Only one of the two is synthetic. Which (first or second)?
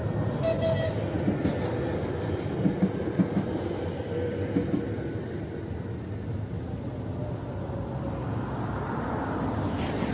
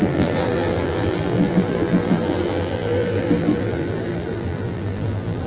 second